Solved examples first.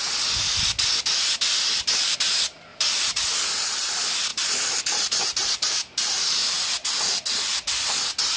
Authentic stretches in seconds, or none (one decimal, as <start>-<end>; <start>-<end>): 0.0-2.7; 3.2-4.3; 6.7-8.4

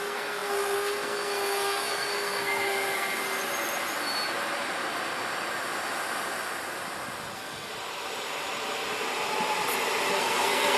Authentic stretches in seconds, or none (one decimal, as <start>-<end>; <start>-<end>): 3.2-7.3; 7.7-10.1

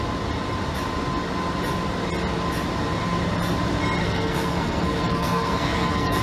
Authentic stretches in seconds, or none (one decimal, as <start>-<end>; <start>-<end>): 0.0-4.0

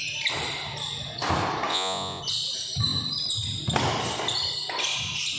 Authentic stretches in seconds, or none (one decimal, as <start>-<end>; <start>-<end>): 0.0-1.7; 2.2-5.4

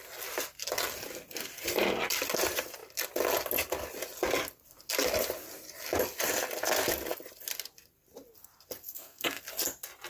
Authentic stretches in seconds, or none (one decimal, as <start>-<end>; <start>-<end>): 0.0-8.8; 9.4-10.1

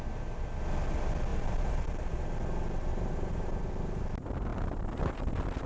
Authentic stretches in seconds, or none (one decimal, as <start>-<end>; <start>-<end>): 0.0-1.3; 2.2-2.9; 3.7-5.7

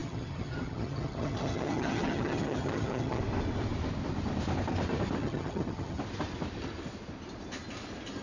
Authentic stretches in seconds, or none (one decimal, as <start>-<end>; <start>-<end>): 3.2-5.2; 6.0-8.2

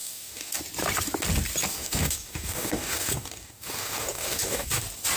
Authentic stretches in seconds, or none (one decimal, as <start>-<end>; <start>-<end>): 0.6-1.7; 4.8-5.2